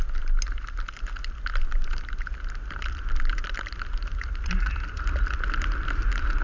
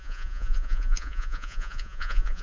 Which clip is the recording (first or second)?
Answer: first